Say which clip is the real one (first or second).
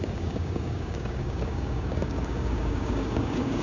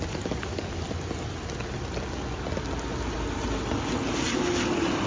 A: second